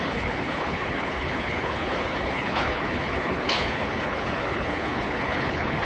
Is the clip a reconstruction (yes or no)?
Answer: yes